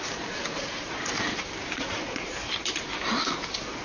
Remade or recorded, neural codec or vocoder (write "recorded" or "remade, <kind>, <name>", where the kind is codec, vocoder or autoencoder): recorded